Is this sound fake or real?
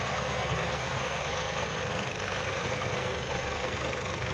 fake